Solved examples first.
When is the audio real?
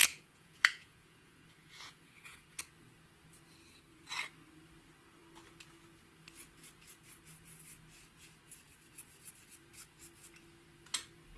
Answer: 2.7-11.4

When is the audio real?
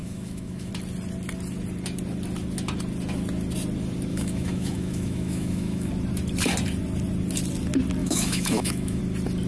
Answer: 0.7-4.1; 5.9-8.0; 9.0-9.5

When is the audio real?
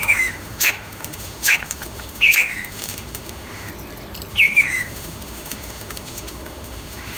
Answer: 3.7-4.3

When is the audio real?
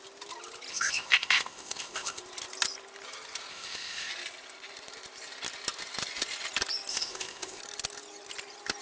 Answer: 0.0-0.7; 2.2-3.5; 4.1-6.9; 7.6-8.8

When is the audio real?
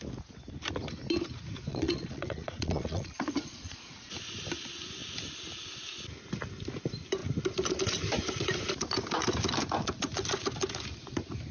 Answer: 0.0-1.7; 3.9-11.5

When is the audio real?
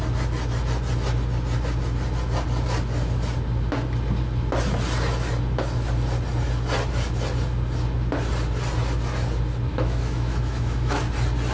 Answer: 0.0-9.7; 11.0-11.5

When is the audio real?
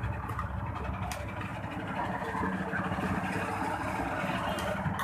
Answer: 0.0-5.0